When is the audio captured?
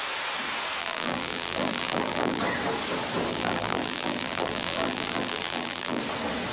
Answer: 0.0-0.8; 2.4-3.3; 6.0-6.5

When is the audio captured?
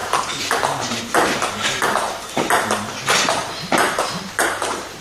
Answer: 0.0-3.4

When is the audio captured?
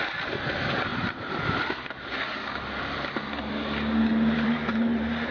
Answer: 0.0-0.9; 1.5-2.8; 3.5-4.1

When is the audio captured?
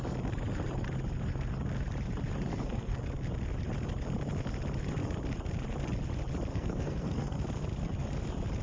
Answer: 0.0-2.5; 3.0-6.5; 7.4-8.6